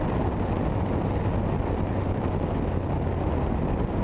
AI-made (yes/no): no